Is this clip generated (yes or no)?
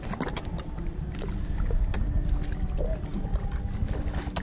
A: no